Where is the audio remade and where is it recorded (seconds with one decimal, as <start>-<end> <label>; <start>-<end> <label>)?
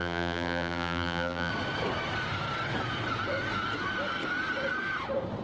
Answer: 0.0-1.5 remade; 1.5-5.4 recorded